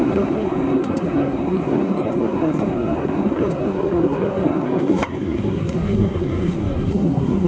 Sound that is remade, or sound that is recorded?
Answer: remade